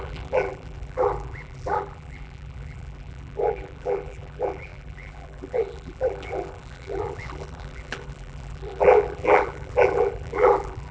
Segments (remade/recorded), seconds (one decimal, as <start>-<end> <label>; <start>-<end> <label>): 0.0-10.9 remade